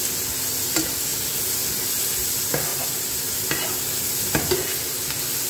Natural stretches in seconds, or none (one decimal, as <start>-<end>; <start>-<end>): 0.0-5.5